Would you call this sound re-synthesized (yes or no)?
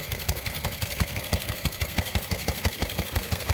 yes